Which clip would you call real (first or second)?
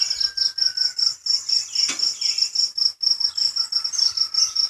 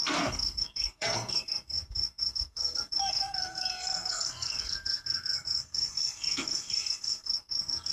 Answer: first